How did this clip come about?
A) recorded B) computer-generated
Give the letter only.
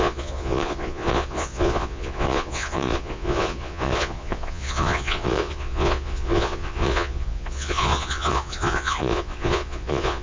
B